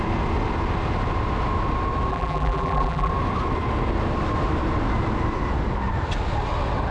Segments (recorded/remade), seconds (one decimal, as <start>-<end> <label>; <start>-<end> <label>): 0.0-2.1 recorded; 2.1-3.1 remade; 3.1-6.9 recorded